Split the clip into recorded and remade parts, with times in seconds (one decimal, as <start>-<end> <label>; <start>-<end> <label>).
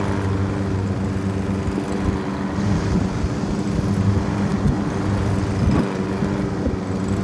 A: 0.0-7.2 recorded